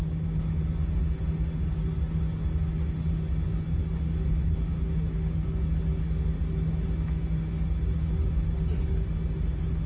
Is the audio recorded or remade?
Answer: recorded